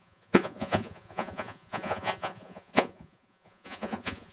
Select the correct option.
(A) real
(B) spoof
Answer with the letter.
B